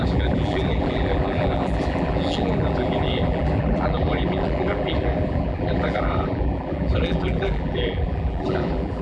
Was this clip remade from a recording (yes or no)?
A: yes